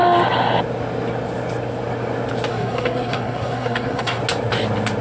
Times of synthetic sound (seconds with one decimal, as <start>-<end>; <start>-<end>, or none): 2.5-4.2